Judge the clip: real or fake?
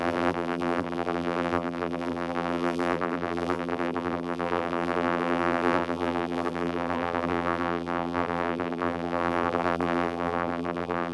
fake